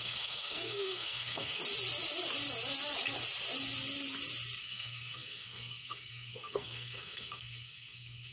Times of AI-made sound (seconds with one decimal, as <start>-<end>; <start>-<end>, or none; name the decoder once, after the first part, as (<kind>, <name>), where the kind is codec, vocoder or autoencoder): 0.0-1.6 (codec, SNAC); 4.6-8.3

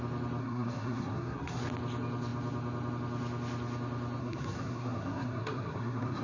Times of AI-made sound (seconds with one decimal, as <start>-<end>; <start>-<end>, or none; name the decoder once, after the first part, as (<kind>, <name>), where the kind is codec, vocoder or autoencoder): 0.4-1.6 (codec, SNAC); 4.2-6.2

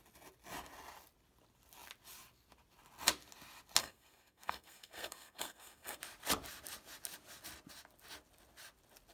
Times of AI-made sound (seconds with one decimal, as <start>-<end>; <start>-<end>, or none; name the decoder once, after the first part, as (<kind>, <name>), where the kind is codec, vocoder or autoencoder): 3.8-6.0 (codec, SNAC)

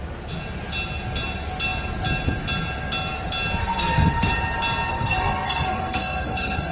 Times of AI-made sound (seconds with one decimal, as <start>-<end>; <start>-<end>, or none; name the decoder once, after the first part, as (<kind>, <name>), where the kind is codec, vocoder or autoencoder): 3.6-4.3 (codec, SNAC); 4.9-6.7